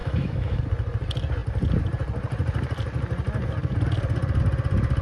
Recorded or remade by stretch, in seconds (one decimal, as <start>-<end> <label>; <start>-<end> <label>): 0.0-0.6 remade; 0.6-5.0 recorded